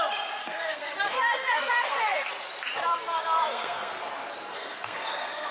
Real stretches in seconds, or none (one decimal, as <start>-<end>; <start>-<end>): 0.0-0.4; 2.3-2.9; 3.9-4.5